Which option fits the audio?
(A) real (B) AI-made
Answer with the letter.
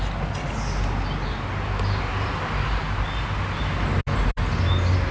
A